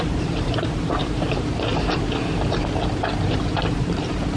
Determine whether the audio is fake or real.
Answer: fake